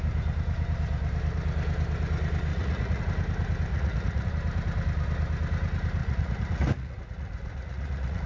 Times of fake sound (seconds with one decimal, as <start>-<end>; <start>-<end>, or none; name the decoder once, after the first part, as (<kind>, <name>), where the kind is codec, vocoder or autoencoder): 2.5-3.0 (vocoder, Vocos); 3.7-4.3; 6.0-8.3

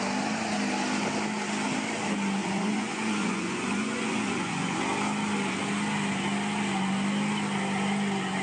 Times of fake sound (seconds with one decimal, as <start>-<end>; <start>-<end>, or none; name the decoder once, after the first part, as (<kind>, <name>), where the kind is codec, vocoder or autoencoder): 2.4-4.8 (vocoder, Vocos)

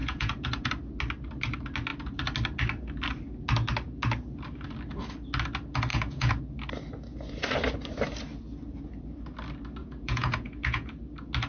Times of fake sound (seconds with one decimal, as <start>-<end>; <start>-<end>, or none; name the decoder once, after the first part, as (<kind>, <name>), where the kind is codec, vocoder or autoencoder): 0.0-0.7 (vocoder, Vocos); 5.9-6.4; 9.8-11.0

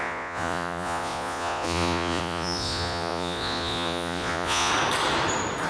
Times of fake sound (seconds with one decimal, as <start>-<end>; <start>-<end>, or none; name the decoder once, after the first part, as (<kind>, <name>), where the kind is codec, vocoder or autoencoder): 0.0-4.7 (vocoder, Vocos)

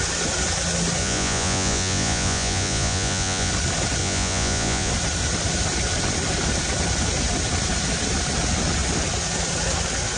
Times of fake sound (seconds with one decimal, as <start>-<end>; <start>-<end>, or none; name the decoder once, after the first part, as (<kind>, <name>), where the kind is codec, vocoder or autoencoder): 1.0-3.5 (vocoder, Vocos); 4.0-4.9